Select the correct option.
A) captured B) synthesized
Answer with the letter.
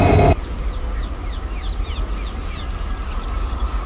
A